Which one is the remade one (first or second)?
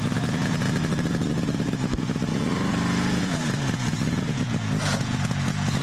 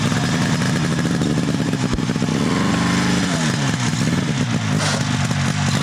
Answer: first